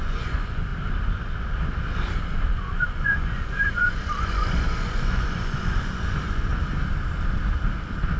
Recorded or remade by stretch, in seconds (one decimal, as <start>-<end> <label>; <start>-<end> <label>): 0.0-0.7 remade; 0.7-2.5 recorded; 2.5-6.5 remade; 6.5-8.2 recorded